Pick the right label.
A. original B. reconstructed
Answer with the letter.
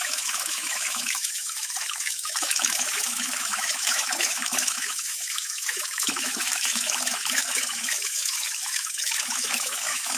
B